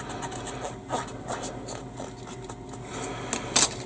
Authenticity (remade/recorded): recorded